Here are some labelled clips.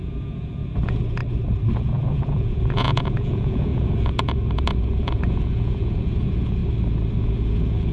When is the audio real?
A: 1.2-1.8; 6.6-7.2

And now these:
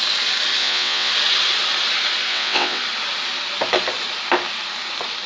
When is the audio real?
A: 0.0-0.6; 1.1-2.3; 2.8-5.3

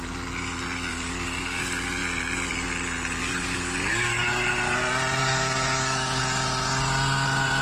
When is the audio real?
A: 0.0-0.9; 1.6-3.2; 4.4-5.2; 6.2-7.6

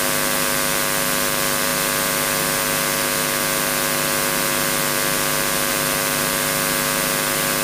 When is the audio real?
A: 0.0-7.6

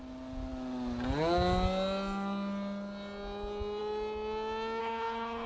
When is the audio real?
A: 0.0-4.8

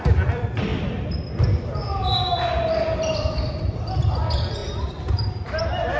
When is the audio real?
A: 2.0-2.8